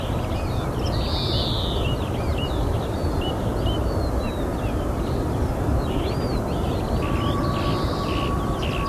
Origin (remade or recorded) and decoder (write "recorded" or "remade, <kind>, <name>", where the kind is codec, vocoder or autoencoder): remade, vocoder, BigVGAN v2